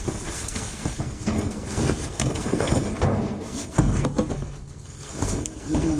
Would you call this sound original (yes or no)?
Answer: no